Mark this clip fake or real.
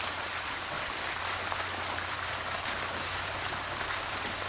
real